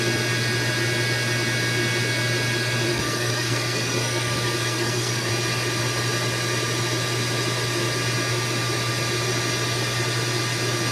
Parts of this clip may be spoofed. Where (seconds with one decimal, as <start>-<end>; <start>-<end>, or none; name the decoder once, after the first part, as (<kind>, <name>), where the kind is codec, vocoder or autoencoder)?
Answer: 2.9-5.3 (codec, SNAC)